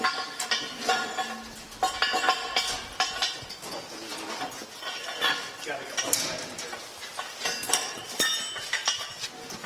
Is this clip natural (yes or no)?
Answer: yes